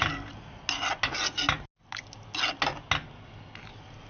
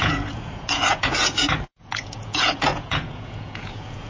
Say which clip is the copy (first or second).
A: second